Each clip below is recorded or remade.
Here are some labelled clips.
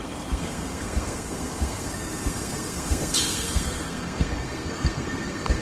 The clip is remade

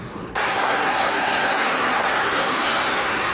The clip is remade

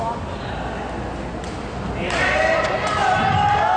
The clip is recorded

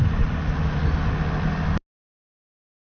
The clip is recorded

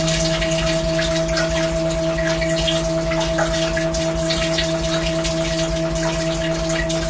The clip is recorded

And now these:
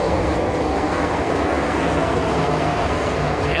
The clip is remade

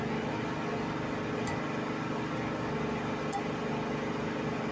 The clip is recorded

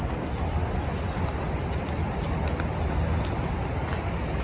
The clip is recorded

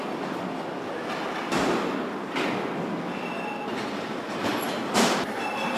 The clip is recorded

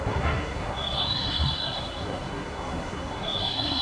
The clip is remade